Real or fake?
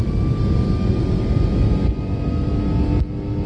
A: real